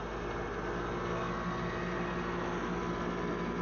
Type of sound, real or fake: real